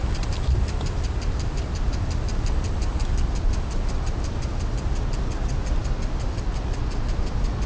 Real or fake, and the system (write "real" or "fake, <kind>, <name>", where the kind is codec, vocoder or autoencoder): real